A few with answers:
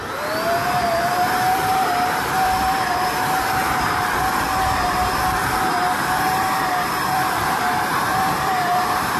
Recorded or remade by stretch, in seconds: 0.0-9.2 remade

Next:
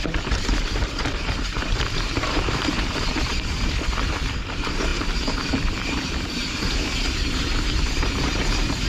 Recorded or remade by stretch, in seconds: 0.0-8.9 remade

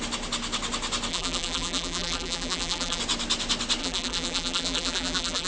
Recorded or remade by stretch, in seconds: 0.0-1.1 recorded; 1.1-3.0 remade; 3.0-3.8 recorded; 3.8-5.5 remade

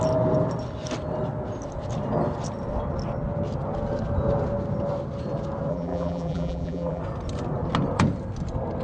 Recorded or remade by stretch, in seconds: 0.0-5.7 recorded; 5.7-7.0 remade; 7.0-8.8 recorded

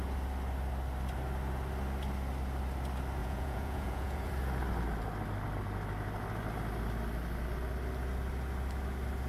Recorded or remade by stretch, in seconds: 0.0-3.2 recorded; 3.2-4.3 remade; 4.3-9.3 recorded

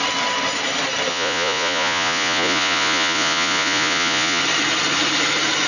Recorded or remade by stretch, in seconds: 0.0-1.1 recorded; 1.1-4.4 remade; 4.4-5.7 recorded

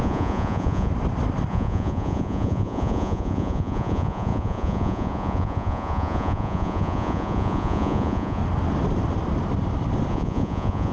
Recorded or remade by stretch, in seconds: 0.0-0.9 remade; 0.9-1.5 recorded; 1.5-8.4 remade; 8.4-10.1 recorded; 10.1-10.9 remade

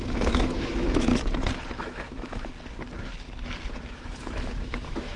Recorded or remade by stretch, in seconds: 0.0-1.1 remade; 1.1-1.8 recorded; 1.8-2.5 remade; 2.5-3.9 recorded; 3.9-5.2 remade